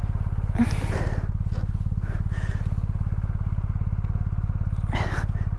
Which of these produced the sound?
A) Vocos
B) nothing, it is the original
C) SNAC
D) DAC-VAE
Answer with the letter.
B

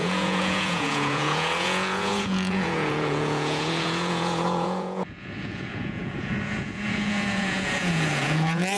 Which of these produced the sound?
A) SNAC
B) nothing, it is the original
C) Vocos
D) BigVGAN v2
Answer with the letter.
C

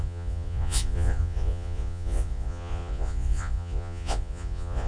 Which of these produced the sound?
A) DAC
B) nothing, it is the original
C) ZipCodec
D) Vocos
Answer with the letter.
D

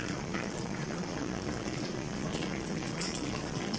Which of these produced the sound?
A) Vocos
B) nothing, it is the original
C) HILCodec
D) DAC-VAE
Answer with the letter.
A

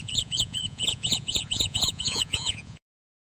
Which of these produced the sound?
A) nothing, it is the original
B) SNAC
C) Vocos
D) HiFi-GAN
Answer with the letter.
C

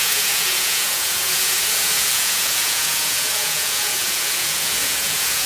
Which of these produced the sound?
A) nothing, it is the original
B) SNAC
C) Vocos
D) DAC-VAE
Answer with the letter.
C